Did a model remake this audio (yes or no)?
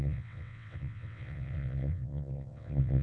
yes